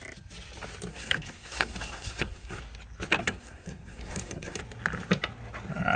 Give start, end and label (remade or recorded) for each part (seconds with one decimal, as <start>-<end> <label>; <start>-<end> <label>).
0.0-0.9 recorded; 0.9-2.6 remade; 2.6-3.2 recorded; 3.2-4.6 remade; 4.6-6.0 recorded